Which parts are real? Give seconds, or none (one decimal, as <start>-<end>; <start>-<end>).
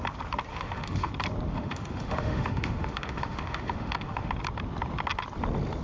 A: 0.0-0.5; 1.1-1.5; 4.3-5.8